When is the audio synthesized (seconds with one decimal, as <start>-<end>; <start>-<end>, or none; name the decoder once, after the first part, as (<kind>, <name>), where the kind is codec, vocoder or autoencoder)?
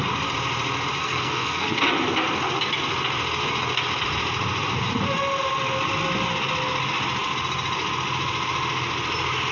1.0-1.8 (codec, SNAC)